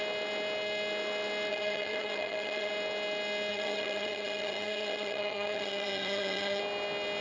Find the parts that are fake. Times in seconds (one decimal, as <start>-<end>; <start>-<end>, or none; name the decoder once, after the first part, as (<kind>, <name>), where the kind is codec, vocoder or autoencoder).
1.5-2.7 (vocoder, HiFi-GAN); 3.5-6.6